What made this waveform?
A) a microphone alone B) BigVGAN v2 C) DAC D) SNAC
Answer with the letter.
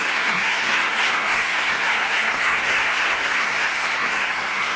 D